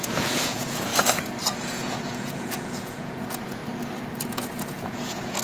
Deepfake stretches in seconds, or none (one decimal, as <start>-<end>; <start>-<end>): 0.0-0.9; 1.6-3.6; 4.3-5.4